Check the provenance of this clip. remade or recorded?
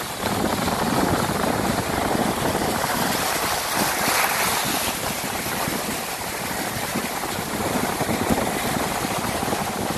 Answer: recorded